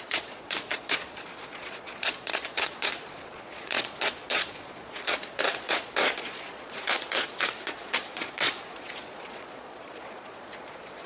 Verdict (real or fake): fake